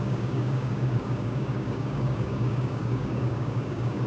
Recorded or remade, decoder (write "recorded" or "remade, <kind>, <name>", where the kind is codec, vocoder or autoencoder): remade, codec, DAC